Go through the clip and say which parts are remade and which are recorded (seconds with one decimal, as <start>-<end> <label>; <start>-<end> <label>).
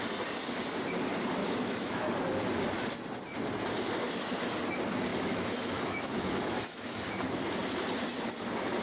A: 0.0-1.4 recorded; 1.4-2.1 remade; 2.1-5.1 recorded; 5.1-7.0 remade; 7.0-8.8 recorded